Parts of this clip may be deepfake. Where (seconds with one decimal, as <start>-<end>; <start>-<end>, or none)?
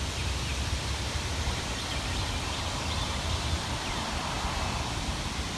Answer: 0.5-3.9